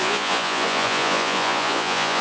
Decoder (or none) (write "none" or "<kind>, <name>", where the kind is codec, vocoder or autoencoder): vocoder, Vocos